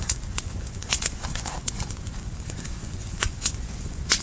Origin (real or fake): fake